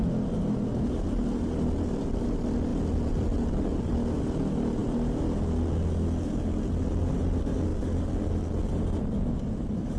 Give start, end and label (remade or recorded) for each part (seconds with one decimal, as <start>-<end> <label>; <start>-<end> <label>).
0.0-10.0 recorded